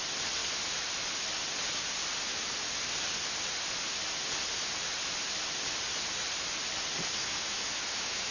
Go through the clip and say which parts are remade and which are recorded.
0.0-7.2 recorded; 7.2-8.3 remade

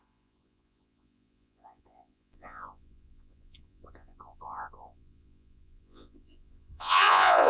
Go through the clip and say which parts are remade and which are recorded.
0.0-7.5 remade